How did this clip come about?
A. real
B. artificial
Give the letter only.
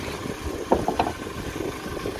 A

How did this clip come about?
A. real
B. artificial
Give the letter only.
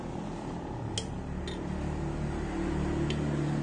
A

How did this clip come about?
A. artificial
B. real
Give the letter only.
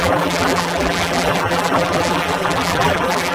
A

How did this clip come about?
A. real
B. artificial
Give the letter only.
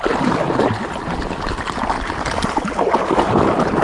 A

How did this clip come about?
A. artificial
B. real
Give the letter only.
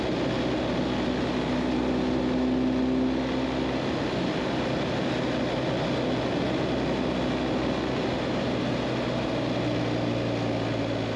B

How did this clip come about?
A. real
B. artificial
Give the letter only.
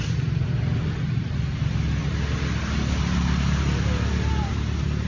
A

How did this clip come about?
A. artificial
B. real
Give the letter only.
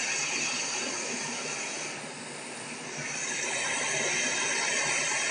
B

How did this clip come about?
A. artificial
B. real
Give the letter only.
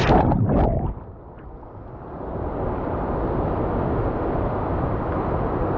B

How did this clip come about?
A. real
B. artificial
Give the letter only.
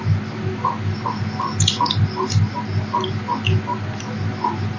A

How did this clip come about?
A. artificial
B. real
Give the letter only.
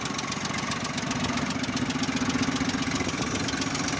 B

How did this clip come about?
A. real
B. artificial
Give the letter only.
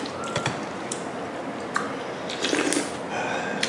A